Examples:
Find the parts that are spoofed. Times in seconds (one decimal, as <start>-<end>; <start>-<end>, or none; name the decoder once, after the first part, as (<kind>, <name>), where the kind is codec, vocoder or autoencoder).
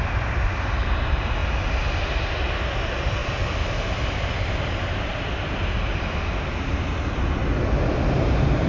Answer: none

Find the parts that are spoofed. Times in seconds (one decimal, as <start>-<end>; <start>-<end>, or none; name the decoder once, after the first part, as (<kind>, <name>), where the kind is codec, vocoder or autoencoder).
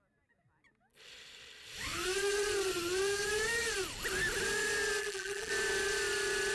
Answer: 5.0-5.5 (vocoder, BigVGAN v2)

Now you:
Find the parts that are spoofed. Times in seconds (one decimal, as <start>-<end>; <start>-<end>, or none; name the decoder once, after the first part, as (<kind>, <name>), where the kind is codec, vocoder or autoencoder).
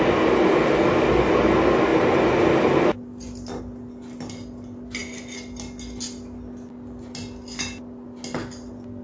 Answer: none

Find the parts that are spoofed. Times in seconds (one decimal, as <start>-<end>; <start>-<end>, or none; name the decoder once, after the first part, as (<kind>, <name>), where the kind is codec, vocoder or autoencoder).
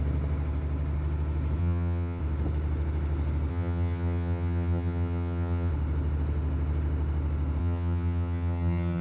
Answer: 1.6-2.2 (vocoder, HiFi-GAN); 3.5-5.7; 7.6-9.0